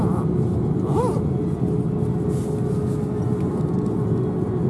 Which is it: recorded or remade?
recorded